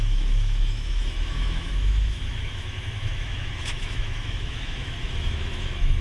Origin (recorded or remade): remade